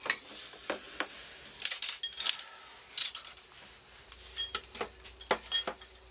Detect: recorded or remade recorded